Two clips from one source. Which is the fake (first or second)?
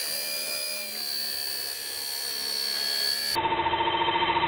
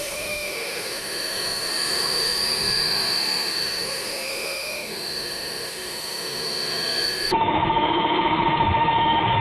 second